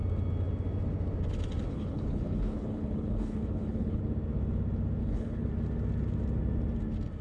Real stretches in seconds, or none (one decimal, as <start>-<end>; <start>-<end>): 0.0-1.7; 4.0-5.0; 5.5-7.2